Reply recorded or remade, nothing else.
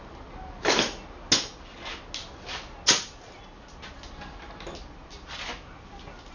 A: recorded